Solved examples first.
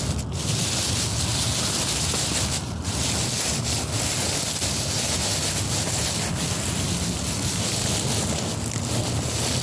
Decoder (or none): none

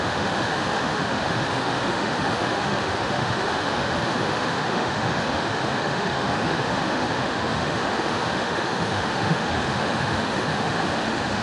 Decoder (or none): autoencoder, DAC-VAE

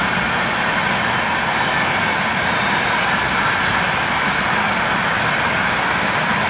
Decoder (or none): none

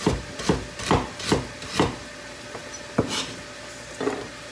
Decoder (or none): none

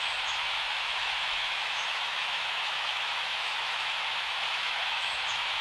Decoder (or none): autoencoder, DAC-VAE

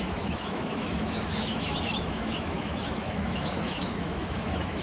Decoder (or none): autoencoder, DAC-VAE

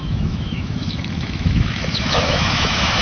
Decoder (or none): autoencoder, DAC-VAE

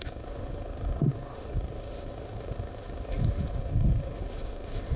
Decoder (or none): autoencoder, DAC-VAE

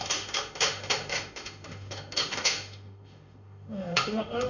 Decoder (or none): autoencoder, DAC-VAE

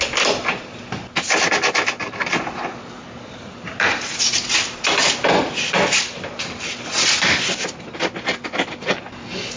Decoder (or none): none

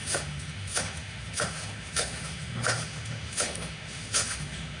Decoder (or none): autoencoder, DAC-VAE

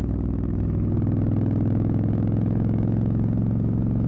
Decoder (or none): autoencoder, DAC-VAE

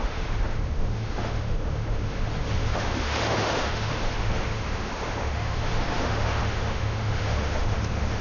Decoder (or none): autoencoder, DAC-VAE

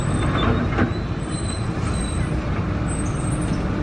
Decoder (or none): none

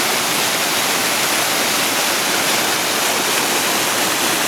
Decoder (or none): none